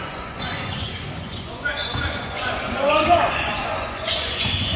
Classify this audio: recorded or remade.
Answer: remade